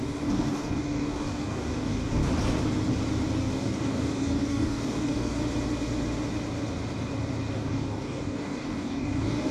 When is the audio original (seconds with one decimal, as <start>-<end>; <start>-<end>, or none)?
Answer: 2.2-3.4; 5.4-7.5